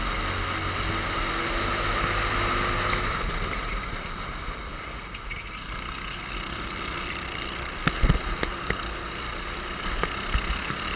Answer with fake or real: real